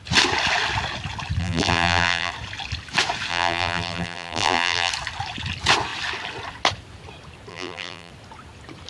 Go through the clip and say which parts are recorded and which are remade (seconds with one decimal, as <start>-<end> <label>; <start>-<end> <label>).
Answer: 0.0-1.4 recorded; 1.4-2.3 remade; 2.3-3.3 recorded; 3.3-4.9 remade; 4.9-7.5 recorded; 7.5-8.1 remade; 8.1-8.9 recorded

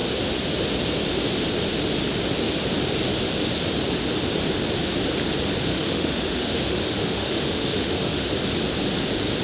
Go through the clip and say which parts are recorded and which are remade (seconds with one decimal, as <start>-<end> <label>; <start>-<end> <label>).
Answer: 0.0-5.7 recorded; 5.7-8.3 remade; 8.3-9.4 recorded

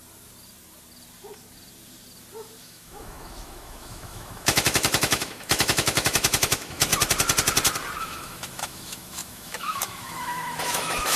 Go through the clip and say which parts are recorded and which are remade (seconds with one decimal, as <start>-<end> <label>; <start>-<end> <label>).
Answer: 0.0-2.6 recorded; 2.6-6.9 remade; 6.9-8.0 recorded; 8.0-11.2 remade

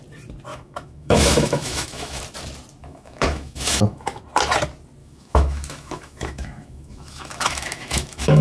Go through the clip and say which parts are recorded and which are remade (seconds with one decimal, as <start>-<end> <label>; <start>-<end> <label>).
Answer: 0.0-0.5 recorded; 0.5-2.2 remade; 2.2-2.8 recorded; 2.8-4.2 remade; 4.2-5.0 recorded; 5.0-8.4 remade

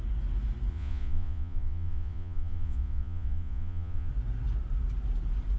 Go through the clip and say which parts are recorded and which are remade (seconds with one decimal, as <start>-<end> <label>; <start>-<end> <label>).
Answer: 0.0-0.7 recorded; 0.7-4.1 remade; 4.1-5.6 recorded